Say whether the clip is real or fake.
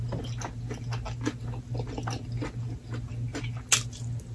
real